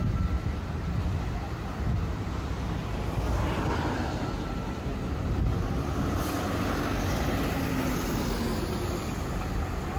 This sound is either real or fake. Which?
real